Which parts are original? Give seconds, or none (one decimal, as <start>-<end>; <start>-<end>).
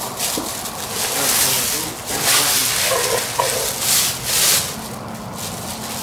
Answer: 0.0-6.0